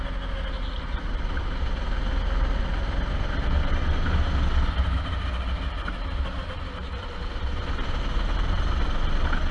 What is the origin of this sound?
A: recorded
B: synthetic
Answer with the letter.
A